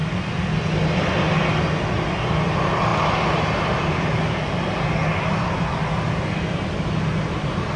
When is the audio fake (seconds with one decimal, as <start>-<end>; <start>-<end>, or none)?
none

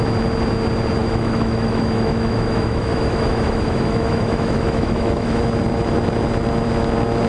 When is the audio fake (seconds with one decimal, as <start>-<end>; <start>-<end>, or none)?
1.0-5.4

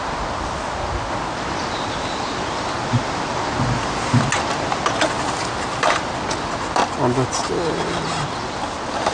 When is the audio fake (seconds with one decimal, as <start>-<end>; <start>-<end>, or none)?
none

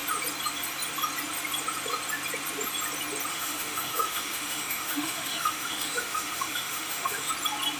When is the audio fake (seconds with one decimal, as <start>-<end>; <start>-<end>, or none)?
3.3-7.3